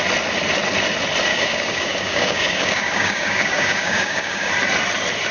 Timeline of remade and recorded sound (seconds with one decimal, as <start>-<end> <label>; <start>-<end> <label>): 0.0-1.3 recorded; 1.3-4.5 remade; 4.5-5.3 recorded